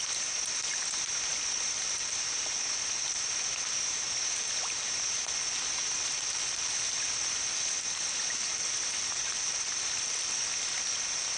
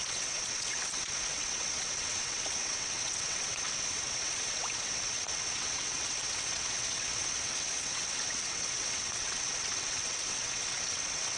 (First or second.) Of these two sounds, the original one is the first